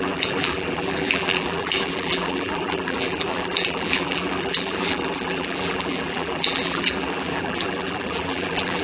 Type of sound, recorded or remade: remade